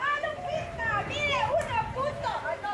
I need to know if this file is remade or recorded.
recorded